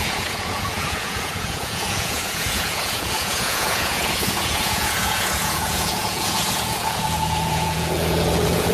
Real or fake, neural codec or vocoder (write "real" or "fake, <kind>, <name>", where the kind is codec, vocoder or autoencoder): fake, vocoder, Vocos